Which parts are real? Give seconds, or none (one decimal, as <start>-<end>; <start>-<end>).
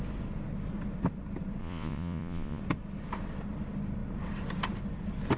0.0-1.6; 2.6-5.4